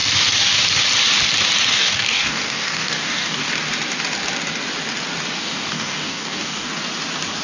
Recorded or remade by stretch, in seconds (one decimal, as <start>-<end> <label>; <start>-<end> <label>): 0.0-1.7 recorded; 1.7-3.5 remade; 3.5-5.4 recorded; 5.4-6.7 remade; 6.7-7.4 recorded